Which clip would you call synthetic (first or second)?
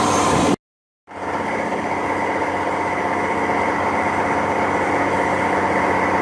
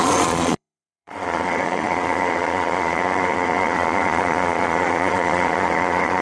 second